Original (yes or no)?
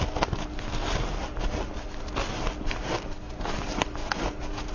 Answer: yes